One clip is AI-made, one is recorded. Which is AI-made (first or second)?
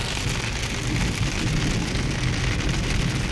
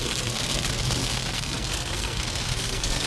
second